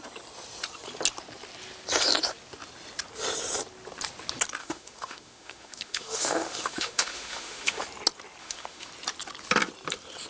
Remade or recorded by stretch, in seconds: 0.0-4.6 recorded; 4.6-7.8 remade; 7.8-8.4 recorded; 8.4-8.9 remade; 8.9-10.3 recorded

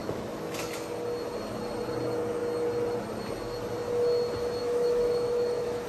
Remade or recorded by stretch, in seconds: 0.0-0.6 remade; 0.6-4.6 recorded; 4.6-5.9 remade

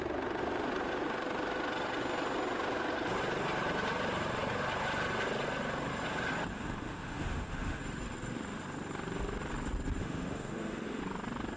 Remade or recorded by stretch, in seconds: 0.0-6.5 recorded; 6.5-7.8 remade; 7.8-10.0 recorded; 10.0-11.0 remade; 11.0-11.6 recorded

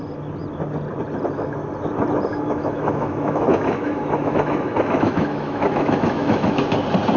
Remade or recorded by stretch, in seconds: 0.0-2.3 recorded; 2.3-6.6 remade; 6.6-7.2 recorded

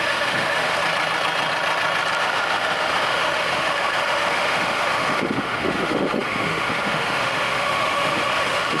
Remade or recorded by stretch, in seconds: 0.0-0.8 remade; 0.8-2.2 recorded; 2.2-8.8 remade

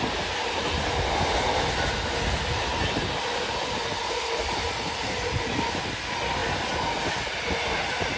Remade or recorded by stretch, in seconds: 0.0-8.2 recorded

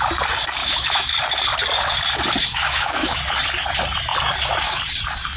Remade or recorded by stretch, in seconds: 0.0-0.6 recorded; 0.6-1.1 remade; 1.1-2.4 recorded; 2.4-3.2 remade; 3.2-5.4 recorded

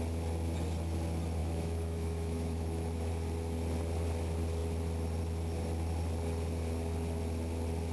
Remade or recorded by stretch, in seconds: 0.0-1.4 recorded; 1.4-3.1 remade; 3.1-7.9 recorded